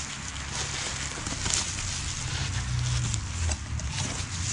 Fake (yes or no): no